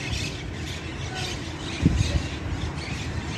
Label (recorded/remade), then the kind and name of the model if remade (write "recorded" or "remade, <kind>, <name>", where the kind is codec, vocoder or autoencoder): recorded